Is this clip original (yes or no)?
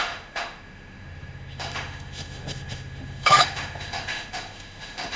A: no